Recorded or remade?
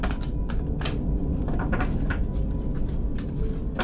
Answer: recorded